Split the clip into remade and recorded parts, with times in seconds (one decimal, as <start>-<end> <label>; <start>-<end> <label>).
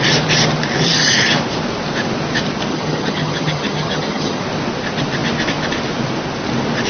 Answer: 0.0-2.7 recorded; 2.7-4.4 remade; 4.4-6.9 recorded